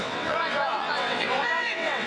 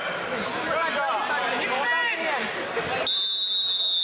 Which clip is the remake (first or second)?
first